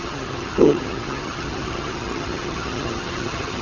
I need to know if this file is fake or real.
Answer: fake